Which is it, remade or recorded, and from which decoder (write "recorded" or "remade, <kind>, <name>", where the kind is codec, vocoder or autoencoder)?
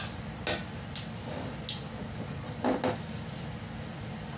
recorded